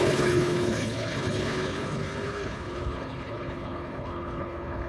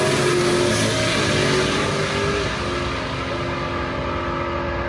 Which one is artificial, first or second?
first